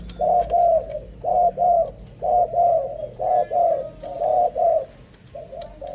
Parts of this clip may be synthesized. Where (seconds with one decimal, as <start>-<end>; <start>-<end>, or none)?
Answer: 4.3-4.9